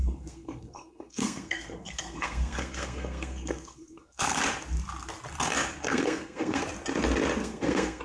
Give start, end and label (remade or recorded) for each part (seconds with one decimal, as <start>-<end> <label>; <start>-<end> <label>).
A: 0.0-4.4 remade; 4.4-5.9 recorded; 5.9-6.6 remade; 6.6-7.4 recorded; 7.4-8.0 remade